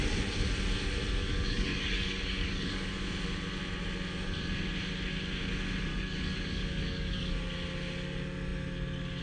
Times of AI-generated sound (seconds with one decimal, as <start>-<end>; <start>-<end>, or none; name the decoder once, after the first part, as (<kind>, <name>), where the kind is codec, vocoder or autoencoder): 1.2-2.9 (codec, DAC); 5.9-7.3